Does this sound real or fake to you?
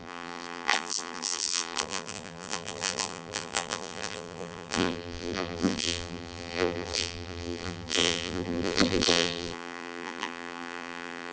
fake